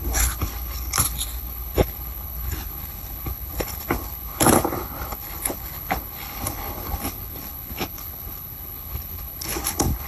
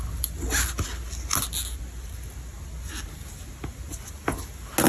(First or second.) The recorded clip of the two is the second